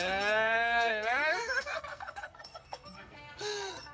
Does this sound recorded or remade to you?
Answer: remade